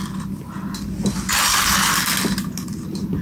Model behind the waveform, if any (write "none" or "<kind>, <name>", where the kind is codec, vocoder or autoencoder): none